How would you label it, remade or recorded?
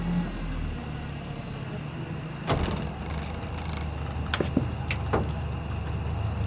recorded